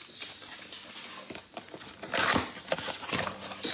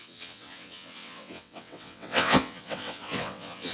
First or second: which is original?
first